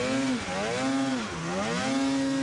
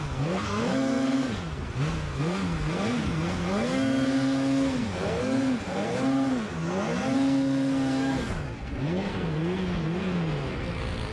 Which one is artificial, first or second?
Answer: second